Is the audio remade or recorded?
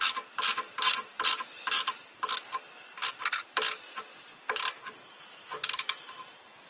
recorded